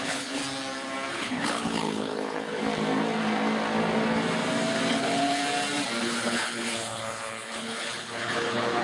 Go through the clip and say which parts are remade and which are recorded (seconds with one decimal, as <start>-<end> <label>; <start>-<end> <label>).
0.0-0.4 remade; 0.4-1.1 recorded; 1.1-2.6 remade; 2.6-4.9 recorded; 4.9-5.4 remade; 5.4-6.0 recorded; 6.0-8.8 remade

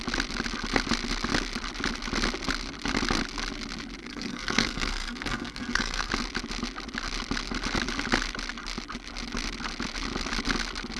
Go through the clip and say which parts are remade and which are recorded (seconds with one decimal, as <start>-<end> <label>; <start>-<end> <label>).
0.0-4.0 recorded; 4.0-6.1 remade; 6.1-11.0 recorded

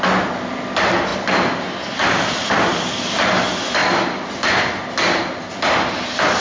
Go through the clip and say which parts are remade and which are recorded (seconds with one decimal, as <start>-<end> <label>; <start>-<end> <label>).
0.0-1.1 recorded; 1.1-3.0 remade; 3.0-6.4 recorded

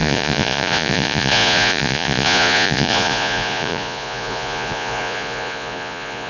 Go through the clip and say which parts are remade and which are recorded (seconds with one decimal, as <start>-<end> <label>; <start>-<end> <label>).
0.0-6.3 remade

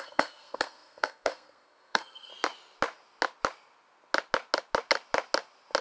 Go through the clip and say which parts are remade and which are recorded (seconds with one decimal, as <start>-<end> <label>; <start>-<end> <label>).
0.0-2.3 remade; 2.3-5.8 recorded